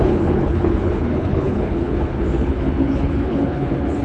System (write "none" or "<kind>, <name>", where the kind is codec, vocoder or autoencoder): codec, HILCodec